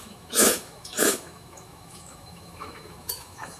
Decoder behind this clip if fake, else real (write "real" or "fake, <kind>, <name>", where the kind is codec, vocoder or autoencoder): fake, autoencoder, DAC-VAE